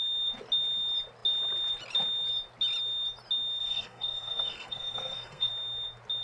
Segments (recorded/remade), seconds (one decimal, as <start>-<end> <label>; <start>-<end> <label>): 0.0-3.6 recorded; 3.6-5.5 remade; 5.5-6.2 recorded